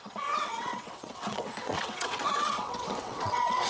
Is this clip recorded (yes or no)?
no